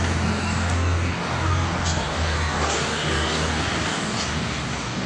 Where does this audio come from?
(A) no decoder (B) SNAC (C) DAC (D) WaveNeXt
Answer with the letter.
C